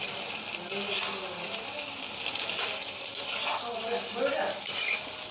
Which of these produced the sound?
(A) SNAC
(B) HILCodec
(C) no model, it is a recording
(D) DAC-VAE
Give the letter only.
C